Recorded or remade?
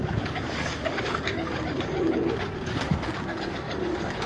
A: remade